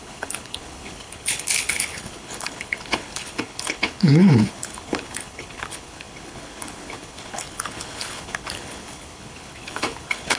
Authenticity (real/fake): fake